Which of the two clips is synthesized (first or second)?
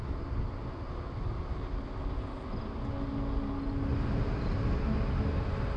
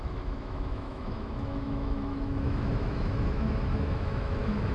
second